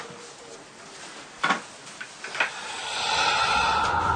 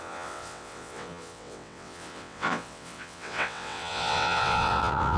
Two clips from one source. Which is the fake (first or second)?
second